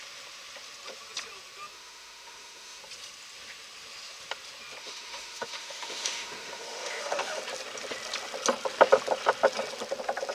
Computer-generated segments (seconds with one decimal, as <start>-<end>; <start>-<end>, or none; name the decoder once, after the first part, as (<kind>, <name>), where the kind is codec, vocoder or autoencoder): 1.7-2.8 (autoencoder, DAC-VAE); 4.8-7.4